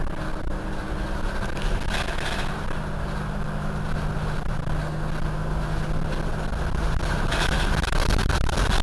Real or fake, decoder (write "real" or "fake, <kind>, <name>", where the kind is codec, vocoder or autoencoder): real